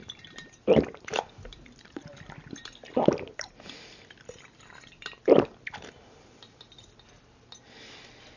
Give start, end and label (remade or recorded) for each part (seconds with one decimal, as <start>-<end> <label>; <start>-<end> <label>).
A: 0.0-8.4 remade